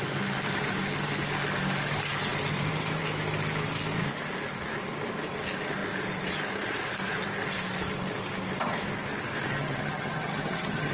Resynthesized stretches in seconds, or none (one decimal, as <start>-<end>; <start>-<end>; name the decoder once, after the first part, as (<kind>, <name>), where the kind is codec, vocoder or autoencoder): 9.6-10.9 (vocoder, HiFi-GAN)